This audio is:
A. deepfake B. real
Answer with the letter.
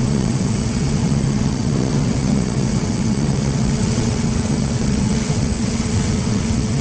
A